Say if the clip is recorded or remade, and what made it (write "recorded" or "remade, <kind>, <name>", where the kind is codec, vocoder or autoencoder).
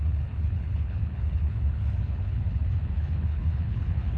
remade, codec, HILCodec